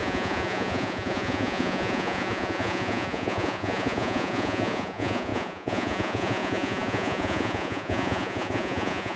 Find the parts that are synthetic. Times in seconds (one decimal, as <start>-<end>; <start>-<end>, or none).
0.0-9.2